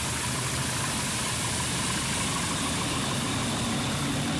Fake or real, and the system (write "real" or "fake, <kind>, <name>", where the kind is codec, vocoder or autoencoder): real